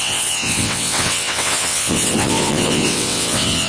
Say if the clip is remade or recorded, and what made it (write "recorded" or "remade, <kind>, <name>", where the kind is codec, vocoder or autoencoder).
remade, vocoder, WaveNeXt